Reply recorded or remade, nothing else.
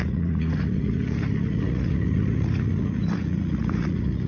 remade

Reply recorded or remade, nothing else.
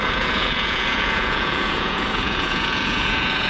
remade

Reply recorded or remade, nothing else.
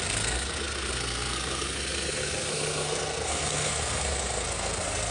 remade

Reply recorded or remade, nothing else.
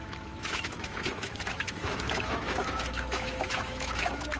remade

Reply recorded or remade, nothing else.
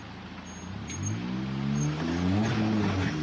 recorded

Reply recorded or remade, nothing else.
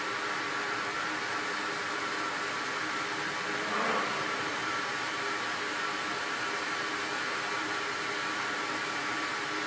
recorded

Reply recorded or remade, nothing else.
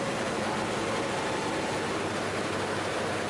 recorded